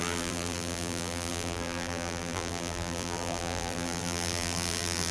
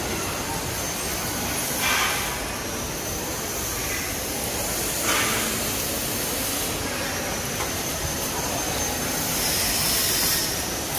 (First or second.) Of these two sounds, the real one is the second